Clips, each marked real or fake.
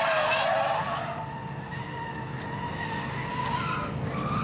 real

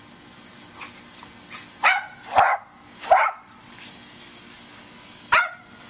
real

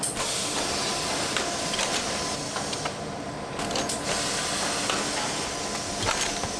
real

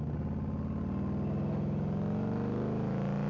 real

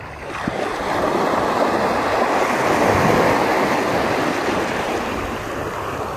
real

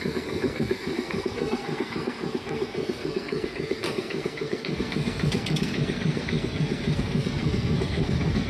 fake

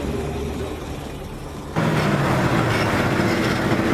real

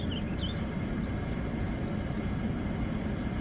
real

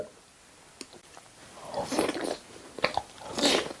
real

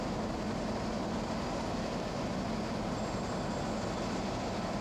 real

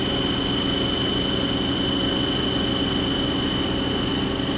real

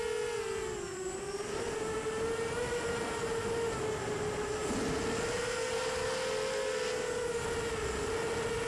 real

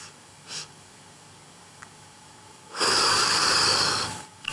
fake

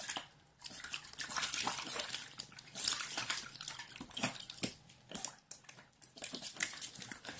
real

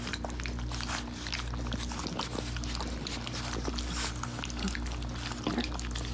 real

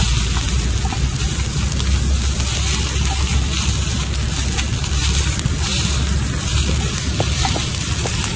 real